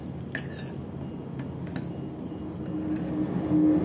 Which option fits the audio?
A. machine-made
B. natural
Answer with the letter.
B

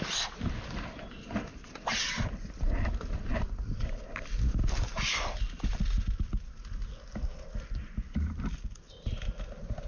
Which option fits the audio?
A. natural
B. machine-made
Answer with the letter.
A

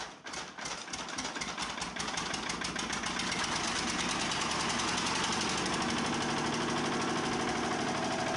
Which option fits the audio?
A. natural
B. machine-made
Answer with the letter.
A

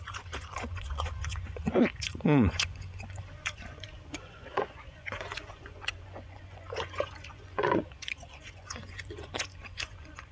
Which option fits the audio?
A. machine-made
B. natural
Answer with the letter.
A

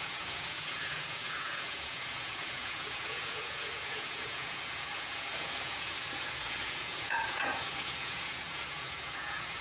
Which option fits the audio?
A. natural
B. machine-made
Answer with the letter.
B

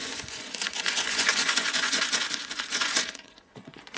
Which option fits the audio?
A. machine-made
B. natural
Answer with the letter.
A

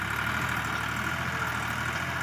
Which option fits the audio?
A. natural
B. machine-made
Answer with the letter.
A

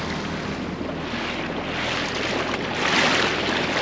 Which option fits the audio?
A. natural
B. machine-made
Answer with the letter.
A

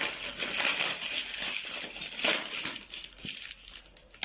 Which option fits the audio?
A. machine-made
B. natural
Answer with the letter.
B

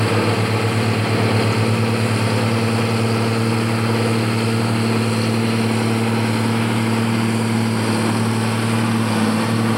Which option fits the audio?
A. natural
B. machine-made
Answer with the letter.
A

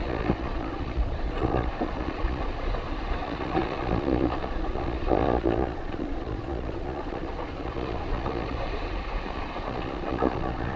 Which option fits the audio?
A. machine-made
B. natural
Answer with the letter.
A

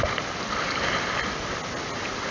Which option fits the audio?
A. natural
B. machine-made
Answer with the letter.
A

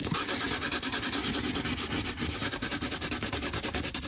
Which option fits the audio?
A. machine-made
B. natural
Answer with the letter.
B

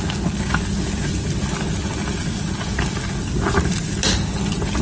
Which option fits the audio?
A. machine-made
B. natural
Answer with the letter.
B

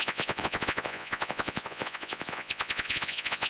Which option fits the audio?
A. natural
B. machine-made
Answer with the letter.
B